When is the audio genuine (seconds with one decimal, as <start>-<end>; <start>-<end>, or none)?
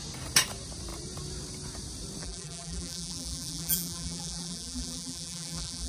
0.0-2.2